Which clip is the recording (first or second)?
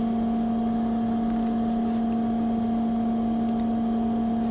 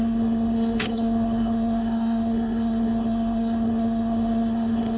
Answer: first